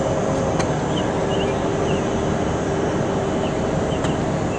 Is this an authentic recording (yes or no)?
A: yes